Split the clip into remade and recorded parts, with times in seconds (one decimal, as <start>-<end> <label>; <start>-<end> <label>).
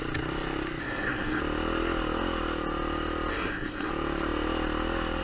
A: 0.0-0.8 recorded; 0.8-1.4 remade; 1.4-3.3 recorded; 3.3-3.9 remade; 3.9-5.2 recorded